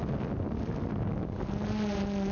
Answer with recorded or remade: recorded